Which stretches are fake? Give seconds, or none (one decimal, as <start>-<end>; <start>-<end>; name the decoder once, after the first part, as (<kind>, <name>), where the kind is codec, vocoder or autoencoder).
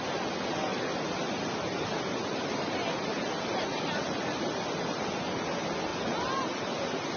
0.7-5.0 (vocoder, BigVGAN v2); 5.9-7.2